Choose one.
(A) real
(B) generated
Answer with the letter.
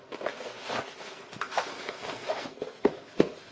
B